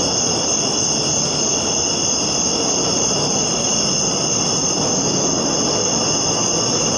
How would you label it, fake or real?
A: real